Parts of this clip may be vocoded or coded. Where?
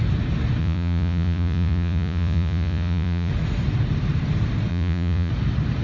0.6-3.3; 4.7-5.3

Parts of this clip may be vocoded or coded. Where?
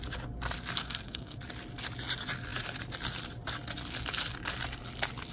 0.8-1.4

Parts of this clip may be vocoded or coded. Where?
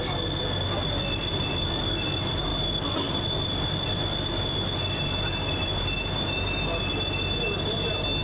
none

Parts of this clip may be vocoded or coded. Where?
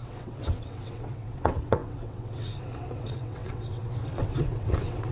0.0-5.1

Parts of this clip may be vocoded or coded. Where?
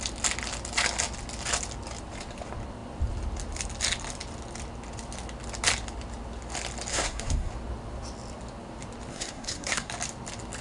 6.9-7.5; 9.1-9.9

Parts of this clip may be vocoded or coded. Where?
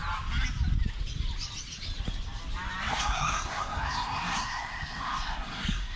2.9-6.0